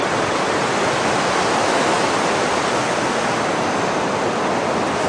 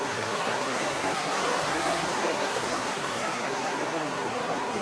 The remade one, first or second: second